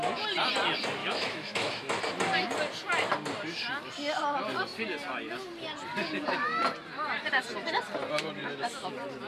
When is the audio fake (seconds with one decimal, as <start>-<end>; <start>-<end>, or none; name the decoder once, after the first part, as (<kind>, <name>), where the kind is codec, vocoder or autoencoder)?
1.0-2.0 (autoencoder, DAC-VAE); 8.4-8.9